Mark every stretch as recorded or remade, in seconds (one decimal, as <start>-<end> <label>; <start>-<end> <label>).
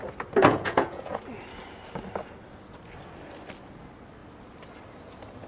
0.0-0.4 recorded; 0.4-1.2 remade; 1.2-5.5 recorded